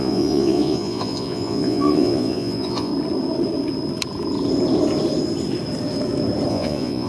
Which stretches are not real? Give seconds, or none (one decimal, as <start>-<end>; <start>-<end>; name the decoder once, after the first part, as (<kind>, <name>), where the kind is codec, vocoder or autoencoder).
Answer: 0.0-2.9 (vocoder, Vocos); 6.5-7.1